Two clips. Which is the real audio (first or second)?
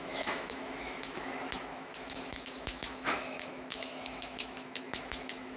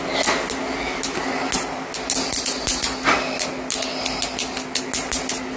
second